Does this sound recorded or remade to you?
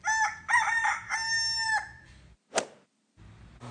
recorded